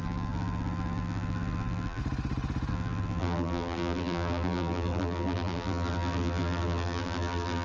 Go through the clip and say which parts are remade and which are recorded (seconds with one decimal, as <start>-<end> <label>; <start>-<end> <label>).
0.0-2.0 remade; 2.0-2.7 recorded; 2.7-7.6 remade